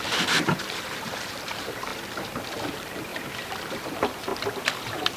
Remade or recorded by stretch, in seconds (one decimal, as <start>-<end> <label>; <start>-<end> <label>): 0.0-1.9 remade; 1.9-2.7 recorded; 2.7-3.1 remade; 3.1-3.9 recorded; 3.9-4.3 remade; 4.3-4.8 recorded; 4.8-5.2 remade